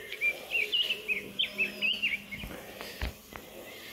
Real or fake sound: real